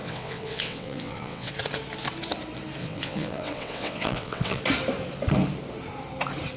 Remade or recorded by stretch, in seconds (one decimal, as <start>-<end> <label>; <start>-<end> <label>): 0.0-1.5 remade; 1.5-2.8 recorded; 2.8-4.6 remade; 4.6-6.6 recorded